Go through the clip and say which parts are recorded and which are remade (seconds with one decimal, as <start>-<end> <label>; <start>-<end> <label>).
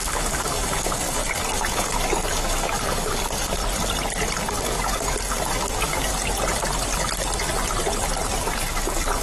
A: 0.0-3.6 remade; 3.6-4.4 recorded; 4.4-6.1 remade; 6.1-8.4 recorded; 8.4-9.2 remade